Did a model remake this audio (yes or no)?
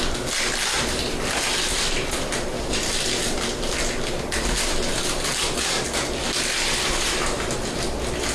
no